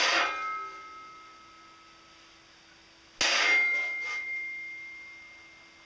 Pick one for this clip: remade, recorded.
recorded